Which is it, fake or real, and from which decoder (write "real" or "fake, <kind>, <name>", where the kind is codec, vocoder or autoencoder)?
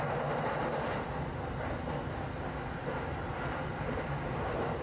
real